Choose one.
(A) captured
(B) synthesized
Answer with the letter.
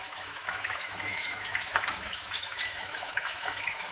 B